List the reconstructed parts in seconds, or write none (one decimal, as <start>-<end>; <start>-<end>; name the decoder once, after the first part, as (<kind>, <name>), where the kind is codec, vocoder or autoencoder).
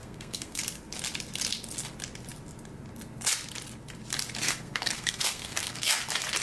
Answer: 0.0-0.6 (codec, SNAC); 4.4-6.0